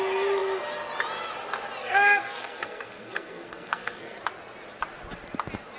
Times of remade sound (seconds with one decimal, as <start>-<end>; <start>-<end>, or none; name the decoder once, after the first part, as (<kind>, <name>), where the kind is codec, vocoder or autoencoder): 1.8-4.2 (codec, SNAC)